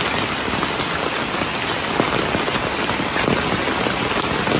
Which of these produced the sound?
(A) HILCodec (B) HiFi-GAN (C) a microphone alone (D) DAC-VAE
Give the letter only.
C